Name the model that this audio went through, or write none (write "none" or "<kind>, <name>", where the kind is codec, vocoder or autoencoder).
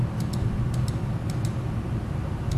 none